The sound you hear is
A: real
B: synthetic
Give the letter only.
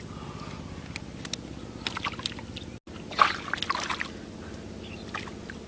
A